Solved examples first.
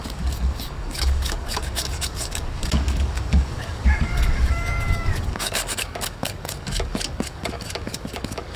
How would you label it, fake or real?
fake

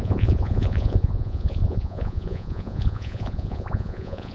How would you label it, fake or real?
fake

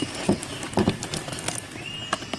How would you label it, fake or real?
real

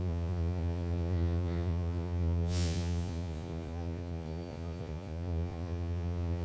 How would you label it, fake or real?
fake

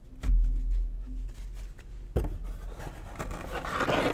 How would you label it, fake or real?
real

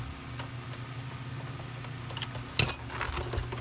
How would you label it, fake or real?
real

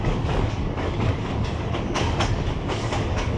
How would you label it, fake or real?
fake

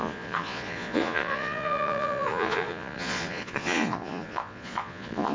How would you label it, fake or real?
fake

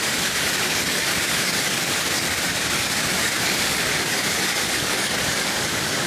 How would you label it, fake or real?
fake